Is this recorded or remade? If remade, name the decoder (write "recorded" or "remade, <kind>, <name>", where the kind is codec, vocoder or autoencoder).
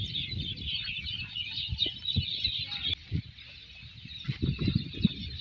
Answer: recorded